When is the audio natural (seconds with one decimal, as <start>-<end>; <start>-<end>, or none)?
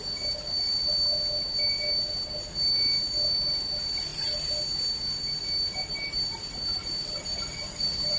0.0-7.2